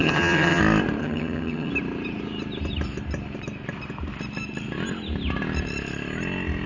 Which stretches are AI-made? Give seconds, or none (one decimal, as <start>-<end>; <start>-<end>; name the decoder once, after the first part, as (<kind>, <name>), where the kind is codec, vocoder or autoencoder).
0.0-0.6 (vocoder, HiFi-GAN); 1.0-1.7